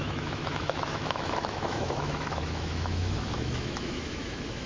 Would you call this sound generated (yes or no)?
yes